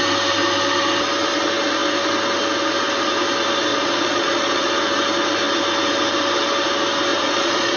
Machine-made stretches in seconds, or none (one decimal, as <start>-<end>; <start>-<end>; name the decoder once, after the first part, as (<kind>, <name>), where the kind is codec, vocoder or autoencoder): 3.7-4.7 (vocoder, Vocos); 7.1-7.8